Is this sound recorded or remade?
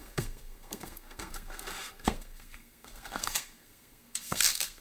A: remade